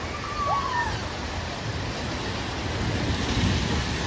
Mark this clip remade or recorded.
recorded